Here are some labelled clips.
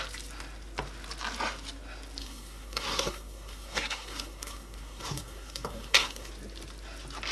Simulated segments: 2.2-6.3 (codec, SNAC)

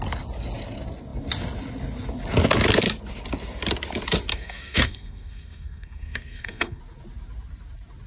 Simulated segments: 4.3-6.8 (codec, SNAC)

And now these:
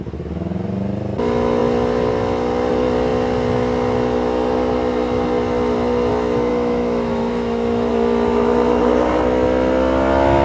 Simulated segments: 6.5-7.9 (autoencoder, DAC-VAE)